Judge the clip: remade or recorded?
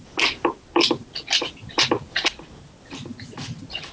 recorded